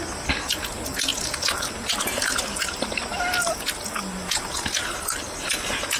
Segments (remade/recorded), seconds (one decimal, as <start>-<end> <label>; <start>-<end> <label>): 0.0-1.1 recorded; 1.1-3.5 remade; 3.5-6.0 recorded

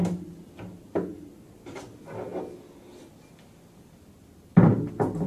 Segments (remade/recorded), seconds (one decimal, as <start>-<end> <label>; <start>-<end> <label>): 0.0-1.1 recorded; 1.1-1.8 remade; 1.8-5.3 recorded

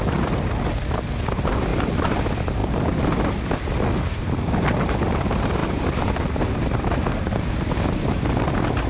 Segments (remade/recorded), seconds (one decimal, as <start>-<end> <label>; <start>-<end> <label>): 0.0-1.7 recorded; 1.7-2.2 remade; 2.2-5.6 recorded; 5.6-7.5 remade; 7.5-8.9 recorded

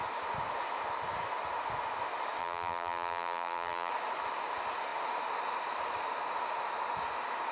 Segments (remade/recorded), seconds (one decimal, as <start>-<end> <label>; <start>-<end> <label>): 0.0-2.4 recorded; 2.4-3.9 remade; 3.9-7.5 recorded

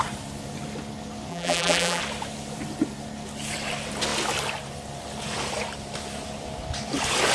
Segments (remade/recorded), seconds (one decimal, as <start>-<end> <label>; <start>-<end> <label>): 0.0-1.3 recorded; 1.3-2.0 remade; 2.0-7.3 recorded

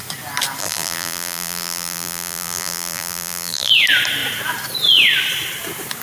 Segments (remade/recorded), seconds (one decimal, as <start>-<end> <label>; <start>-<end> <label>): 0.0-0.6 recorded; 0.6-3.7 remade; 3.7-6.0 recorded